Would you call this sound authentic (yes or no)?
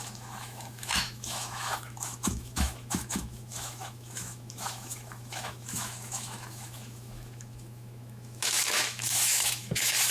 no